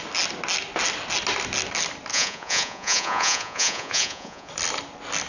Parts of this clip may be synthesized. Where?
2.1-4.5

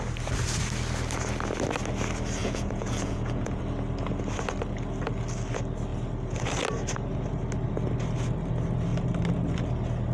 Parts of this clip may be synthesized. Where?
2.4-3.6

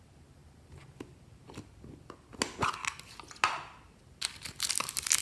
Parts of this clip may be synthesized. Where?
none

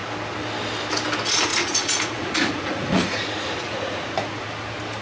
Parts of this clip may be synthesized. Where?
1.5-4.5

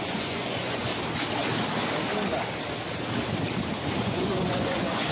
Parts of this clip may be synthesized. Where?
0.0-0.9; 4.0-5.1

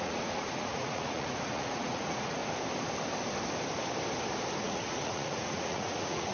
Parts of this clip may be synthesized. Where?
0.0-2.4; 4.6-6.3